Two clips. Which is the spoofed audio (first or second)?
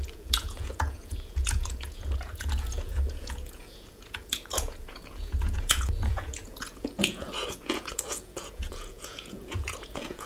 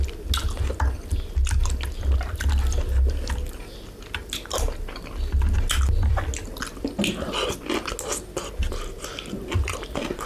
first